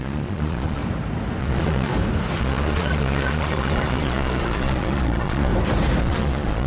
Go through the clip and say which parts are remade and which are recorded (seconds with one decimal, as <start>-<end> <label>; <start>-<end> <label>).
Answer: 0.0-0.8 remade; 0.8-1.4 recorded; 1.4-1.9 remade; 1.9-2.4 recorded; 2.4-5.5 remade; 5.5-6.0 recorded; 6.0-6.7 remade